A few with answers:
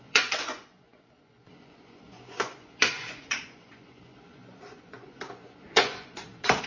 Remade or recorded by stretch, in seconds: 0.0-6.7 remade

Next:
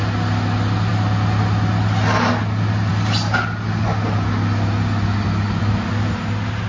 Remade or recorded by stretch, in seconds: 0.0-6.7 recorded

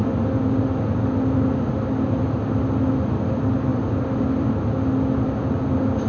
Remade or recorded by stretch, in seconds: 0.0-6.1 recorded

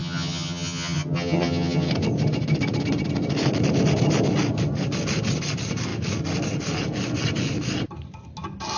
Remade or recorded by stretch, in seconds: 0.0-1.9 remade; 1.9-8.8 recorded